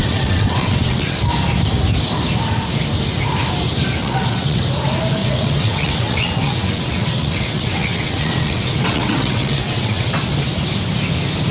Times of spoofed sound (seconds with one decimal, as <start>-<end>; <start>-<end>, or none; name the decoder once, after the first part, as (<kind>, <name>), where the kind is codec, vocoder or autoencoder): 0.0-1.2 (vocoder, WaveNeXt); 4.0-4.6; 5.2-10.2